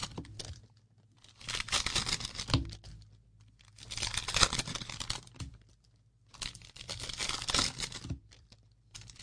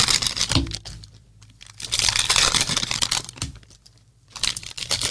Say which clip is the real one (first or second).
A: first